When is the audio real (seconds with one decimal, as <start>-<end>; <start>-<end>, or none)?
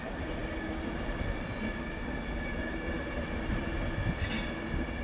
0.0-5.0